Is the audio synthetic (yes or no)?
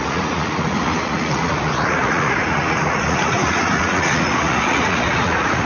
yes